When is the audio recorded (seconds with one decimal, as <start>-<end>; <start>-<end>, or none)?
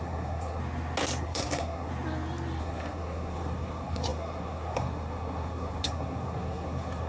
0.6-1.2; 1.9-2.6